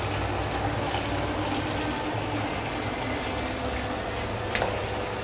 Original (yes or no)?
yes